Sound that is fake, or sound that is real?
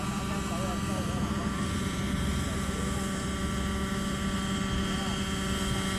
real